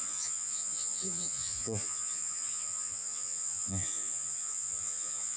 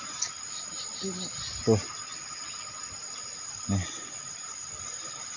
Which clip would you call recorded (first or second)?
second